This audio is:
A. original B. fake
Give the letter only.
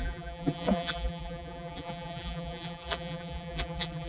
B